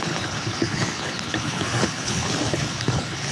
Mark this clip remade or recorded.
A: remade